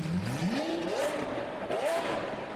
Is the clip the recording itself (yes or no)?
no